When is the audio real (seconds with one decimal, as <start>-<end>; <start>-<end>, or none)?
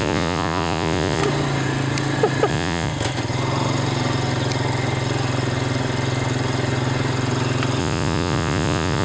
1.2-2.5; 2.9-7.8